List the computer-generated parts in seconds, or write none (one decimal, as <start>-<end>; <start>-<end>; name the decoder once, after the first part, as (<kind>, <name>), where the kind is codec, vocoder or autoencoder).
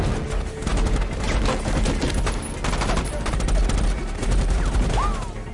none